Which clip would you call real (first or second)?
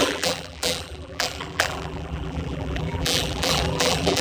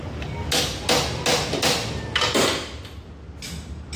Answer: second